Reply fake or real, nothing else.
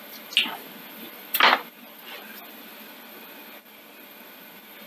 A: real